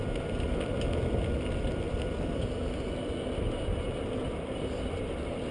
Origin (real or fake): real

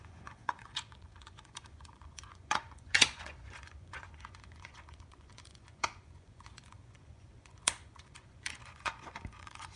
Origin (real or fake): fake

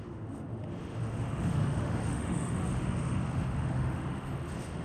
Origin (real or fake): fake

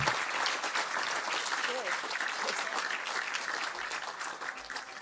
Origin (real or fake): real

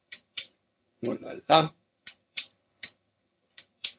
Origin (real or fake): fake